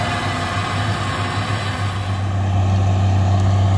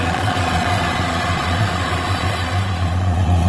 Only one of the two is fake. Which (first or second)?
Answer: second